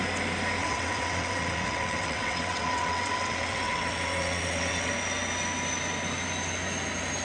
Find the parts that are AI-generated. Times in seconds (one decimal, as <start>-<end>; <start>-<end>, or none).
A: 0.6-4.9